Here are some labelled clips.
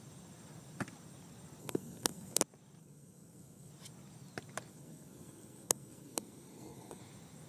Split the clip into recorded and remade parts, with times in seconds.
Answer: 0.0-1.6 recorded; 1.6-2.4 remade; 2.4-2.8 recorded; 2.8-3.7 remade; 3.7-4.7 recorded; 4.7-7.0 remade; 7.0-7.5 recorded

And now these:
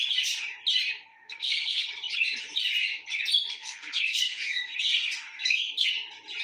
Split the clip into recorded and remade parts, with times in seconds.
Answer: 0.0-1.1 recorded; 1.1-1.9 remade; 1.9-3.6 recorded; 3.6-5.9 remade; 5.9-6.4 recorded

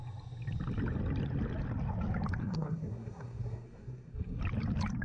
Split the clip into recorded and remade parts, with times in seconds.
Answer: 0.0-2.4 recorded; 2.4-4.4 remade; 4.4-5.0 recorded

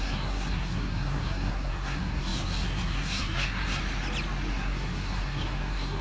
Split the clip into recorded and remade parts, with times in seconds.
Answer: 0.0-3.8 remade; 3.8-4.5 recorded; 4.5-6.0 remade

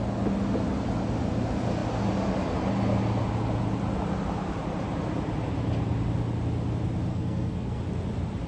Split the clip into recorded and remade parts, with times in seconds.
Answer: 0.0-7.1 recorded; 7.1-7.8 remade; 7.8-8.5 recorded